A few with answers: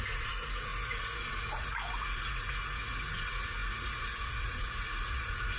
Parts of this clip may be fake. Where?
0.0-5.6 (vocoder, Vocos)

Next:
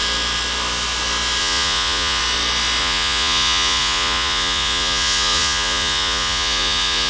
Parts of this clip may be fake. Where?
1.4-2.2 (vocoder, Vocos); 2.8-7.1